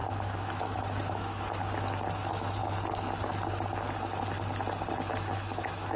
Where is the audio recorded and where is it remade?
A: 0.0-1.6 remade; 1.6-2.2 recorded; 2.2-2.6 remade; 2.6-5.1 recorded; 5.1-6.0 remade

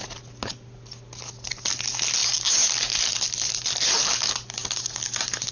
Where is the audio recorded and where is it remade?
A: 0.0-5.5 recorded